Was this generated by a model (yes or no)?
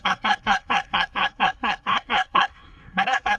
yes